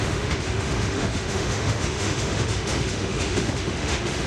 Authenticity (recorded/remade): remade